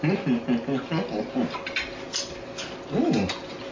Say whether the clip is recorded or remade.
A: recorded